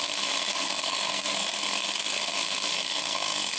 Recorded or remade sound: remade